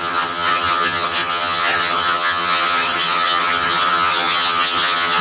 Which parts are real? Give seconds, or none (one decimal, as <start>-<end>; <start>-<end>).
none